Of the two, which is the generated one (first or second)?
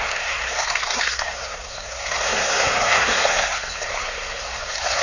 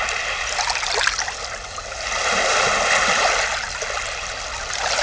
first